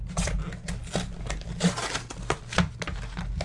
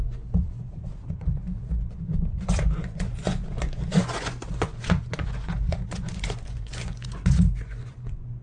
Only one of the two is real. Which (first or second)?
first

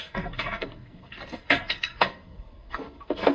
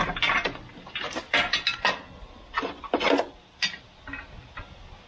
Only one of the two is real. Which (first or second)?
second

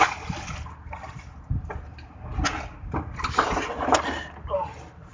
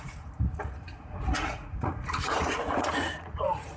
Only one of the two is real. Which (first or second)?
first